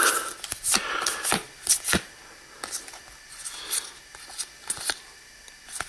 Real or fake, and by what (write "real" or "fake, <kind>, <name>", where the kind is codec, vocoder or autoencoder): real